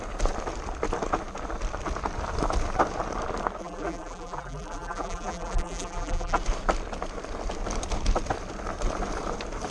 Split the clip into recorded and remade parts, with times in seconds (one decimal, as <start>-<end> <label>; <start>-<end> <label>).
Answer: 0.0-3.6 recorded; 3.6-6.4 remade; 6.4-9.7 recorded